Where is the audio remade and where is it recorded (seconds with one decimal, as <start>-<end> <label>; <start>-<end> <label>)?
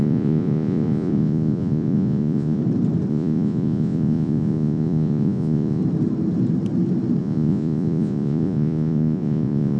0.0-2.6 remade; 2.6-3.1 recorded; 3.1-5.8 remade; 5.8-7.2 recorded; 7.2-9.8 remade